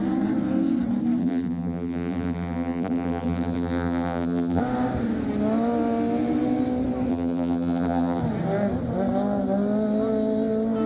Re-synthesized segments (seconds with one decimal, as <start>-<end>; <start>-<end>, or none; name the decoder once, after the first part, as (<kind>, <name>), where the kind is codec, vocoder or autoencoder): 1.2-4.6 (vocoder, BigVGAN v2); 7.1-8.2